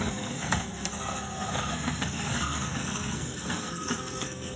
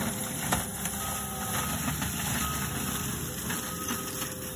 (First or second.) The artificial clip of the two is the first